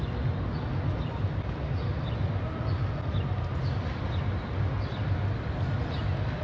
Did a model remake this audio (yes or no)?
no